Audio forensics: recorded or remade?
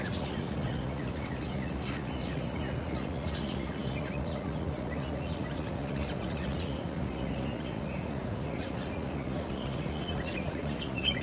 remade